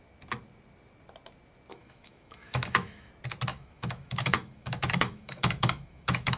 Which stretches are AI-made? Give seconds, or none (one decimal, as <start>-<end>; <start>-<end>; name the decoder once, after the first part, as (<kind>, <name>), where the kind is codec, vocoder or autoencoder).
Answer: 1.7-3.1 (autoencoder, DAC-VAE); 3.5-6.4